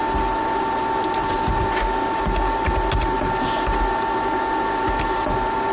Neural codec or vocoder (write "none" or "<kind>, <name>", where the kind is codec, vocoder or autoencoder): none